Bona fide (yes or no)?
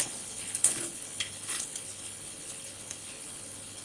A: no